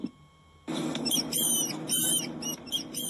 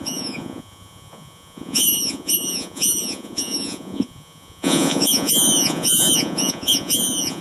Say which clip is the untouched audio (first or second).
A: first